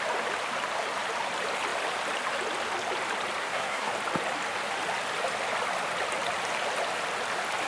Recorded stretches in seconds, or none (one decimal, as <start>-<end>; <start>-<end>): 0.0-3.4; 3.9-7.7